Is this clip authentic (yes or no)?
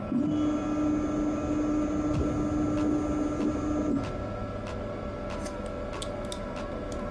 yes